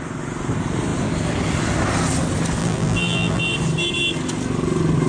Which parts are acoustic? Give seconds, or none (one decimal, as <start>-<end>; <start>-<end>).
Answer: 0.0-2.6; 3.4-5.1